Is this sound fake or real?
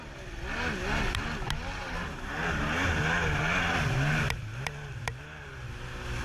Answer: real